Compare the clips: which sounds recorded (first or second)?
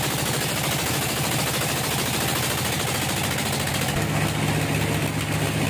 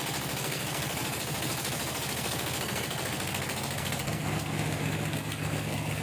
first